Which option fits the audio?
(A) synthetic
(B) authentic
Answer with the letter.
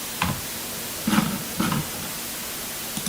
B